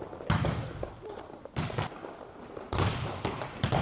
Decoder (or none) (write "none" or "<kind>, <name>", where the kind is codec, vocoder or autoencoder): none